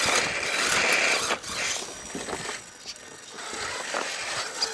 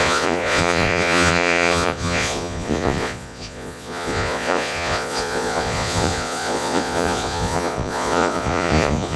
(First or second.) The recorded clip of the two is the first